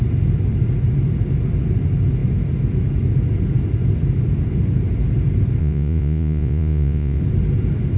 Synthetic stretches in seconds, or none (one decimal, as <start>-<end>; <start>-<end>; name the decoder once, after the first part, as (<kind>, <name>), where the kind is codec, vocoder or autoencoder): 5.6-7.2 (vocoder, Vocos)